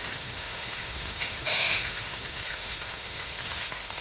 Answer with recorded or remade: remade